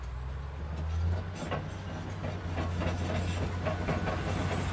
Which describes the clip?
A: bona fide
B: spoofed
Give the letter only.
A